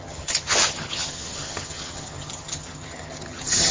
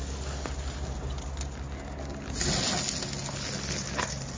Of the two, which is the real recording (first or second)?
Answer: second